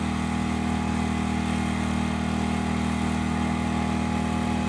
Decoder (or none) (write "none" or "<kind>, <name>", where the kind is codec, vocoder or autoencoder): none